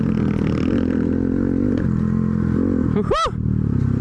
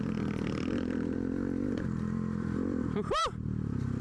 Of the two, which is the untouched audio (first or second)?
first